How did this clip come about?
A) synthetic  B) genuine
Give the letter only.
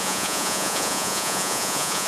A